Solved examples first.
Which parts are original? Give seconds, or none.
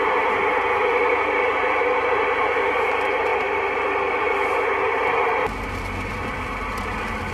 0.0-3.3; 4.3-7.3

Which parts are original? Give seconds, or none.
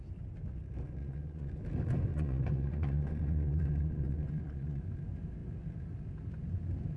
0.0-1.0; 1.5-2.1; 4.8-7.0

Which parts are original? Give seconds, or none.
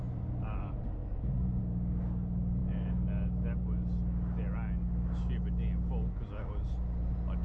0.0-7.4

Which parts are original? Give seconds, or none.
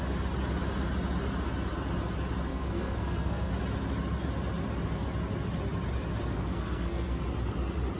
0.0-2.5; 3.5-6.3; 7.2-8.0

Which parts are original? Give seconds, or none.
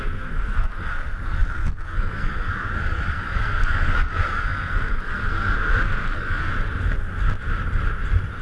6.5-8.4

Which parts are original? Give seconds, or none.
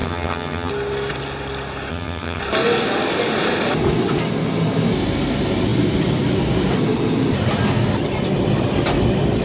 0.7-1.9; 2.4-9.4